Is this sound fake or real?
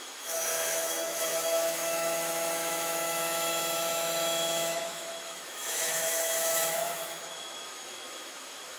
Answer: fake